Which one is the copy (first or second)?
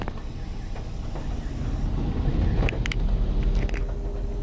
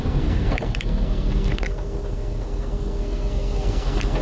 second